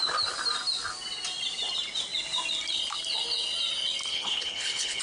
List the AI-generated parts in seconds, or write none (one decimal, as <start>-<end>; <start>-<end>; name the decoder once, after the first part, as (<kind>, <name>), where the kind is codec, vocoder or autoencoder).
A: 4.1-5.0 (codec, HILCodec)